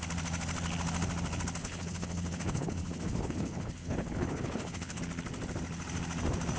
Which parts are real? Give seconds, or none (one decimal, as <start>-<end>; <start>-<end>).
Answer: 0.0-1.6; 5.0-6.6